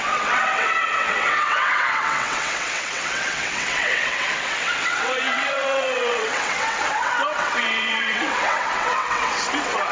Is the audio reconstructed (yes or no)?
yes